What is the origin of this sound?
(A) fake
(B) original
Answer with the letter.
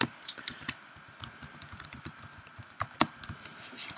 A